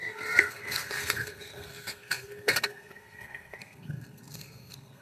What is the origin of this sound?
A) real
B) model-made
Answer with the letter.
B